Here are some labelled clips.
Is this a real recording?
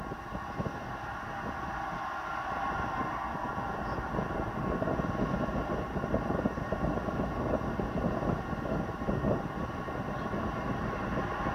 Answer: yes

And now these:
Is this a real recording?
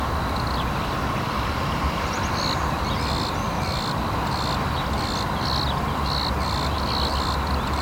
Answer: yes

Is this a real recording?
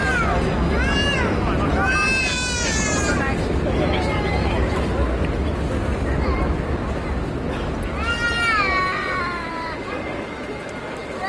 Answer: yes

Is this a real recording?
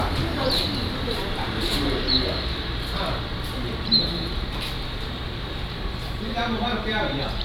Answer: no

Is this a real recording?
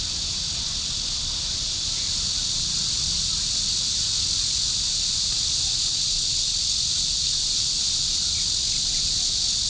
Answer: yes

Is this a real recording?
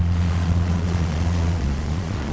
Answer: no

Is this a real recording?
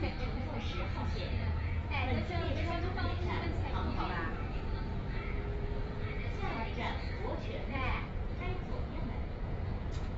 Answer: no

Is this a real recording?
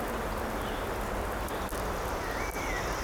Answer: yes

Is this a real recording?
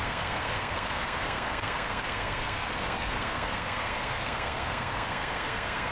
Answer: no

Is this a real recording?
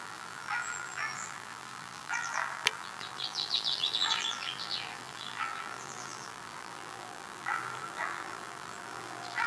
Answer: no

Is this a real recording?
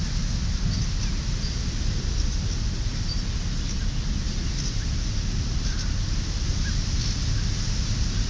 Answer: yes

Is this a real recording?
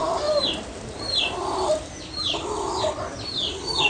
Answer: yes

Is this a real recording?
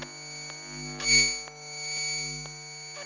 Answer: yes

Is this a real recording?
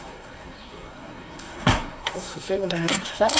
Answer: no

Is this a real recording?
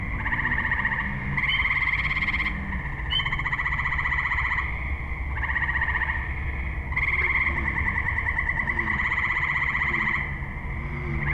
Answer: yes